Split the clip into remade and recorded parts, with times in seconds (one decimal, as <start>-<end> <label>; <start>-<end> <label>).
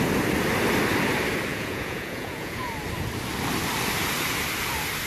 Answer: 0.0-1.5 recorded; 1.5-2.7 remade; 2.7-5.1 recorded